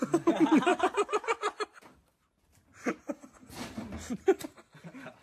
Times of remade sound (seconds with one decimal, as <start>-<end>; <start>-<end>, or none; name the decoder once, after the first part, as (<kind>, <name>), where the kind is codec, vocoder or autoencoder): none